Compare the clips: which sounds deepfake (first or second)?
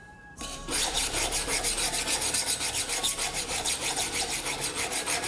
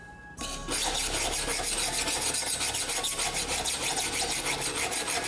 first